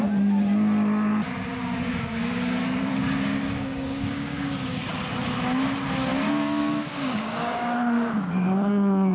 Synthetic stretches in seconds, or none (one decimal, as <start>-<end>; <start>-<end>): 1.5-4.9; 6.1-9.1